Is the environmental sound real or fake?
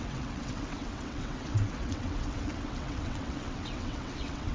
fake